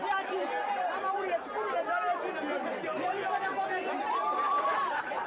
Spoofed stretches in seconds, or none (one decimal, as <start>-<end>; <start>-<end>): none

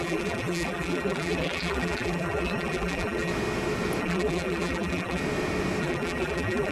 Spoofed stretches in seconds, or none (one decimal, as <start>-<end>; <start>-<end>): 0.0-3.3; 4.0-5.2; 5.8-6.7

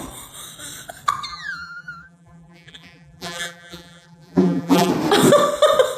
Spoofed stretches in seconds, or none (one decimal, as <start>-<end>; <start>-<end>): 1.3-4.9

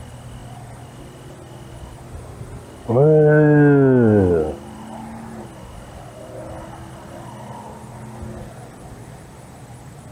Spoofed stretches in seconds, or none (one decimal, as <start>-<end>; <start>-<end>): none

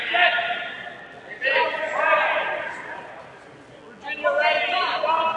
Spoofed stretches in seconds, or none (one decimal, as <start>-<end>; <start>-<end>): 1.6-3.8

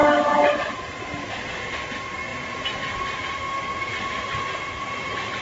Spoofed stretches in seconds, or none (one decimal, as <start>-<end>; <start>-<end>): none